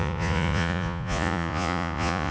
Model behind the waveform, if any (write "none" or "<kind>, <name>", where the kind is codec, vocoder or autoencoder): vocoder, Vocos